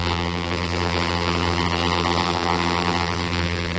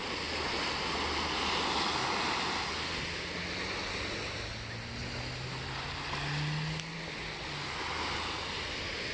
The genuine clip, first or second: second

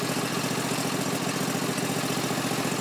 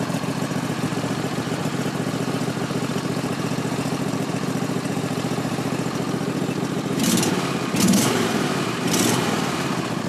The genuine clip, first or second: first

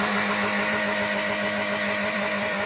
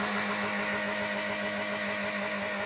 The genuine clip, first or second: second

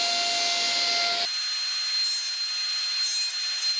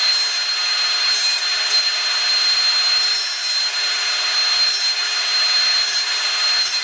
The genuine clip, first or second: first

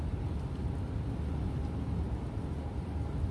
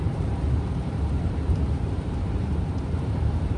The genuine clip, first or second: first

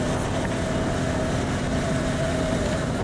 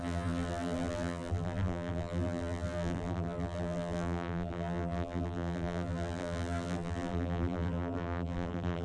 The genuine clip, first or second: first